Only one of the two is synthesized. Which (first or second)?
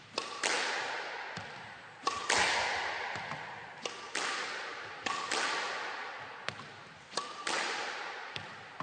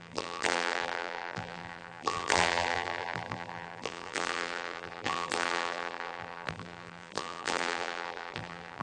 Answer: second